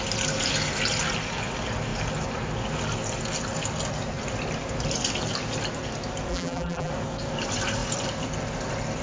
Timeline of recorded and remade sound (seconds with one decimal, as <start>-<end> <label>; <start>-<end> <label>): 0.0-6.3 recorded; 6.3-6.9 remade; 6.9-9.0 recorded